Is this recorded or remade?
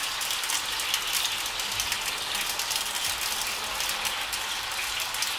recorded